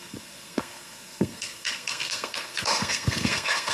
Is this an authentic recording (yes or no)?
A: no